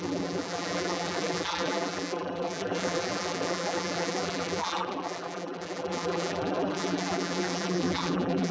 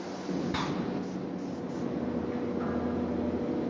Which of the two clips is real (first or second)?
second